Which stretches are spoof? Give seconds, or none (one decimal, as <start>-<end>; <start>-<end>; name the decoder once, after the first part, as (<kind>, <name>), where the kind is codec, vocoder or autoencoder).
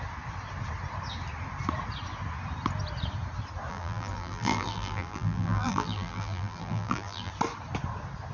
3.7-7.3 (vocoder, BigVGAN v2)